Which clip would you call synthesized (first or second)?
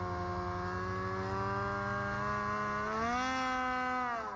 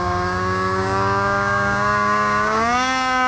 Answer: second